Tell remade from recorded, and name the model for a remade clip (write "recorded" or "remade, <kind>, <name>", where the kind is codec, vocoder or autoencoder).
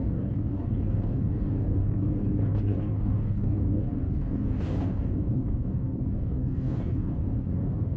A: remade, codec, DAC